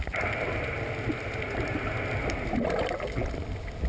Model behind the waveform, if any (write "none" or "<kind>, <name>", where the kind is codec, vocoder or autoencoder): none